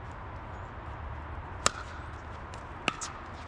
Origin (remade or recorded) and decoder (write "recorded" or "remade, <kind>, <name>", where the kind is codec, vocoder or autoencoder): recorded